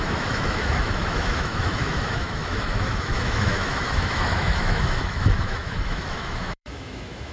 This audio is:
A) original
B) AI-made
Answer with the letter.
B